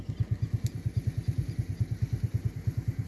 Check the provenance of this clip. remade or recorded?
recorded